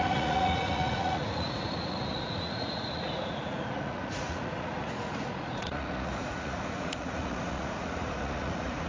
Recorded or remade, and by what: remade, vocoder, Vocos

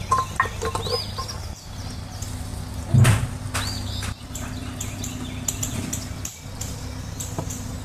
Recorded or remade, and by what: recorded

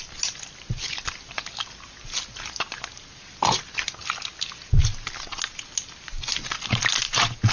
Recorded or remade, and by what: recorded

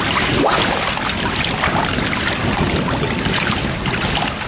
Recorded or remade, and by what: recorded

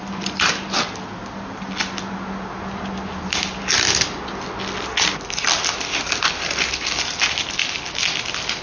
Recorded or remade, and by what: recorded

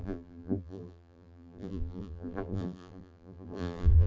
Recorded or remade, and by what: remade, vocoder, BigVGAN v2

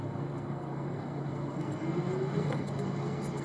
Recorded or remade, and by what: remade, codec, SNAC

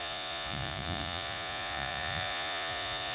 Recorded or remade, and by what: remade, vocoder, Vocos